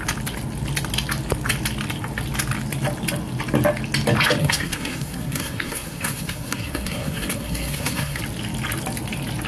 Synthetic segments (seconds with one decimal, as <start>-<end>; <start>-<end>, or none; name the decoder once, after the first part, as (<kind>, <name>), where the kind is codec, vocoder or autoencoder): 4.4-8.2 (codec, SNAC)